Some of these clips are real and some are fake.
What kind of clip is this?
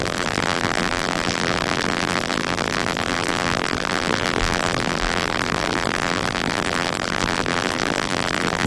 fake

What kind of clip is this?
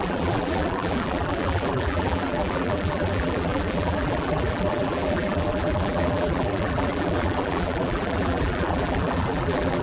fake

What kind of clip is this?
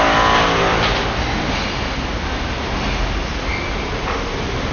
real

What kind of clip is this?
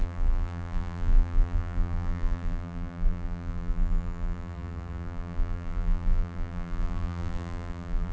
fake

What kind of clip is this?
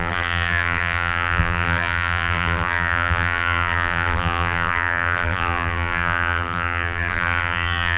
fake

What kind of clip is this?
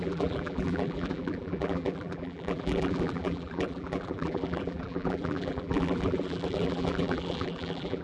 fake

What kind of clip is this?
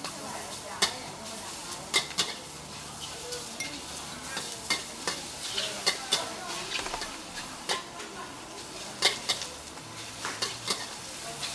real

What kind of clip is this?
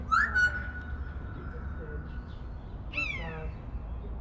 real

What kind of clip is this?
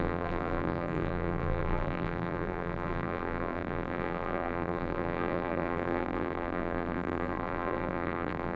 fake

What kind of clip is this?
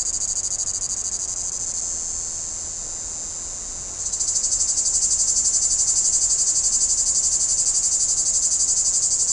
real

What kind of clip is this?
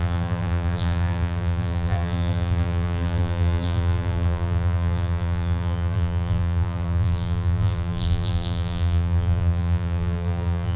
fake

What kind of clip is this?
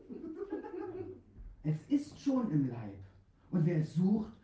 real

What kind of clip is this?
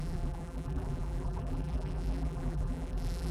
fake